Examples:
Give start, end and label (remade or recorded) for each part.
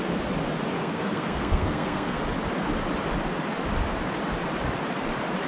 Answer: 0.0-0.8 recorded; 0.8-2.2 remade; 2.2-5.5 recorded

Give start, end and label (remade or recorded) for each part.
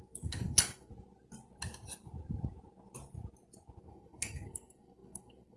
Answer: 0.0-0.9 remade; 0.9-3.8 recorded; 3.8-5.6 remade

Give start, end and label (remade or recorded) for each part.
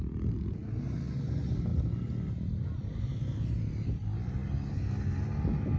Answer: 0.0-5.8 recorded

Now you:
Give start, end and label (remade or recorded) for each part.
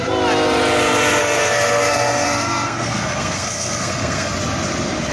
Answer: 0.0-1.2 recorded; 1.2-4.3 remade; 4.3-5.1 recorded